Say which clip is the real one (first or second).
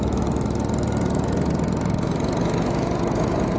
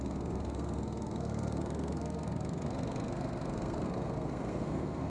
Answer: first